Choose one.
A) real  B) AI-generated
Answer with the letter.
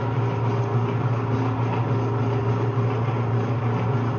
A